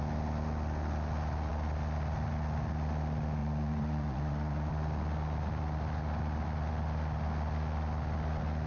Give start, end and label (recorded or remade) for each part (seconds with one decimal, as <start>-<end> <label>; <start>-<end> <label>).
0.0-3.4 recorded; 3.4-4.7 remade; 4.7-8.7 recorded